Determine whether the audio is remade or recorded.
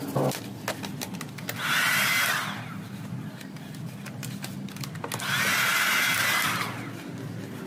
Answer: recorded